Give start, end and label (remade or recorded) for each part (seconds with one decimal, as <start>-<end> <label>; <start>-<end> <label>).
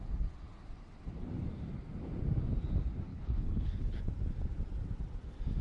0.0-3.1 recorded; 3.1-4.0 remade; 4.0-5.6 recorded